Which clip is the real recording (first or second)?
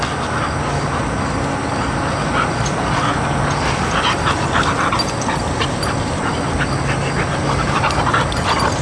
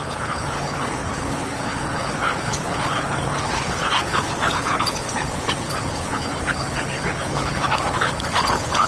first